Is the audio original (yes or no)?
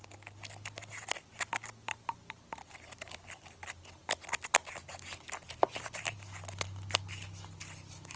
yes